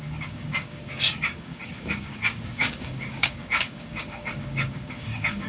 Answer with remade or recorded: remade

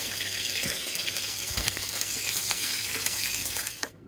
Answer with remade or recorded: remade